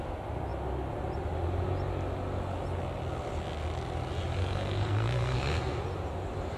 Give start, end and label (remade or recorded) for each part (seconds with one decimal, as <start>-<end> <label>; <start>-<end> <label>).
0.0-4.4 recorded; 4.4-5.8 remade; 5.8-6.6 recorded